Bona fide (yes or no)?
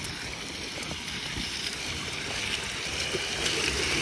no